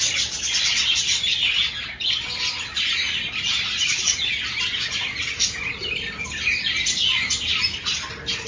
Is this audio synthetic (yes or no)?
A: no